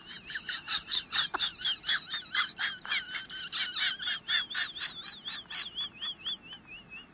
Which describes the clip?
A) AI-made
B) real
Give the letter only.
B